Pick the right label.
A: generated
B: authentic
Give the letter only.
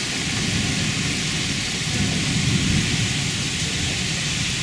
B